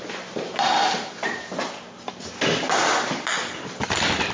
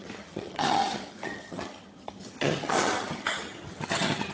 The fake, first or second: second